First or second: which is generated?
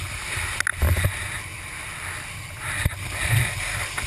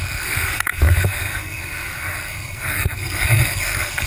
second